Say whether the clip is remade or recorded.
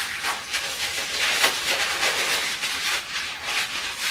remade